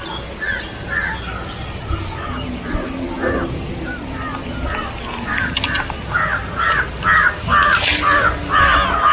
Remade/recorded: recorded